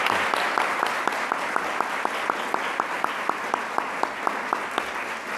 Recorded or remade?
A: recorded